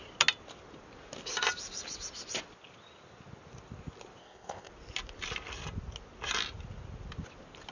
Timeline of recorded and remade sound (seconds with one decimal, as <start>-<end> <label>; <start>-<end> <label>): 0.0-4.2 recorded; 4.2-4.7 remade; 4.7-7.7 recorded